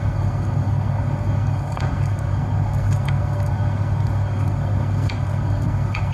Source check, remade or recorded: remade